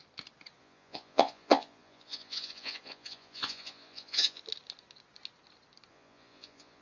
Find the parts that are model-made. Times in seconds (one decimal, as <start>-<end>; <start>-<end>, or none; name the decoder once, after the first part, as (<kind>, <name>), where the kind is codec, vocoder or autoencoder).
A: 0.6-4.4 (vocoder, Vocos); 5.9-6.8